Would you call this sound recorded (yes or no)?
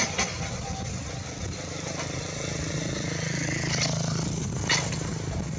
yes